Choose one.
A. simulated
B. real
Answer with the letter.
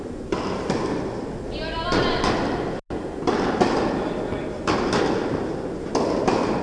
B